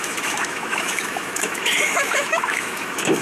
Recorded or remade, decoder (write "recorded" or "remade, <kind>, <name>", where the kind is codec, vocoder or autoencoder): remade, autoencoder, DAC-VAE